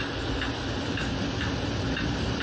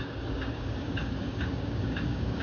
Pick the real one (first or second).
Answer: first